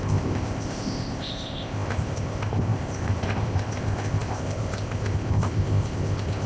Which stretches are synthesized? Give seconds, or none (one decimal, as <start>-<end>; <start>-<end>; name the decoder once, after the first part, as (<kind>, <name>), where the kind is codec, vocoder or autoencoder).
0.0-6.5 (codec, ZipCodec)